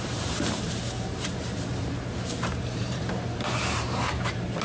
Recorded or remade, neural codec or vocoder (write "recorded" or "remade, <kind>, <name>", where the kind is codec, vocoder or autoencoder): remade, vocoder, BigVGAN v2